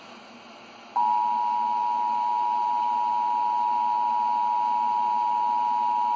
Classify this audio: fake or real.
real